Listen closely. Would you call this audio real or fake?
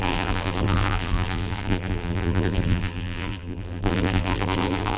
fake